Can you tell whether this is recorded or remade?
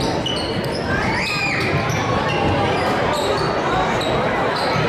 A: recorded